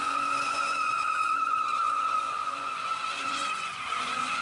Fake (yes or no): yes